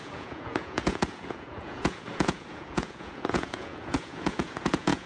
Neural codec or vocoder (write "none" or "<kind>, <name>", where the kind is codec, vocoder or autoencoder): vocoder, Vocos